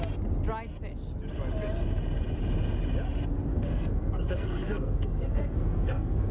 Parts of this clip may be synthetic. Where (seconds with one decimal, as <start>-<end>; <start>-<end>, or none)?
3.5-6.3